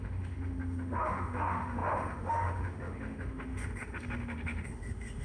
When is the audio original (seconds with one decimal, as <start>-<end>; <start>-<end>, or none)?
none